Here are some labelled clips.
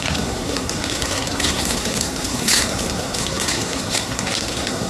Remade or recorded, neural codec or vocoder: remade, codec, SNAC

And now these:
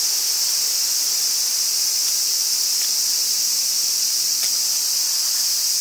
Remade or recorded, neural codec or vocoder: recorded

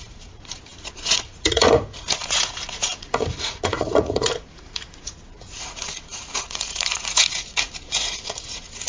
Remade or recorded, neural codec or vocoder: remade, vocoder, Vocos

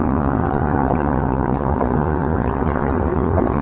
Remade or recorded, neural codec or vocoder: remade, vocoder, WaveNeXt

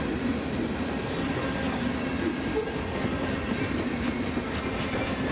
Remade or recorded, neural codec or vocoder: recorded